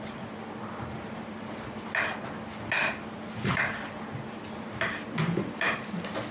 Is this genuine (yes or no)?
yes